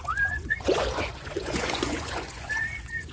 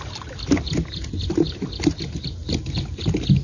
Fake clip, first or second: first